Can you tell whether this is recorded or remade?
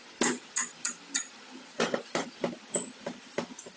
recorded